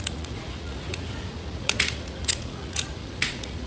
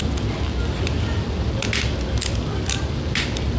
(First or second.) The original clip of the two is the second